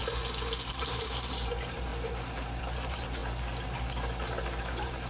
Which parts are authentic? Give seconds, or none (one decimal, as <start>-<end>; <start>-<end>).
0.0-0.7; 1.9-2.6; 3.2-4.6